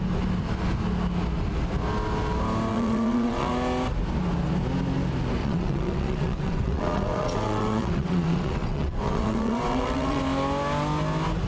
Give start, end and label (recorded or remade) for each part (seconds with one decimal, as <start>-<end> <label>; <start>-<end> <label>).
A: 0.0-2.7 recorded; 2.7-3.5 remade; 3.5-5.4 recorded; 5.4-10.2 remade; 10.2-11.5 recorded